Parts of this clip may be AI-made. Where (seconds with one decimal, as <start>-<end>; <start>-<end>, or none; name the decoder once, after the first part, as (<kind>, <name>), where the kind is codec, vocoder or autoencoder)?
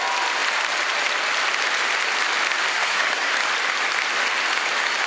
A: 2.7-3.3 (codec, SNAC)